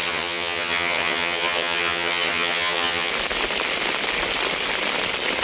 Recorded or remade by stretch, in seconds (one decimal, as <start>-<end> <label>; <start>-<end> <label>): 0.0-3.1 remade; 3.1-5.4 recorded